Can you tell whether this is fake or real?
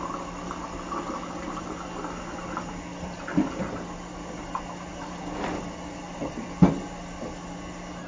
real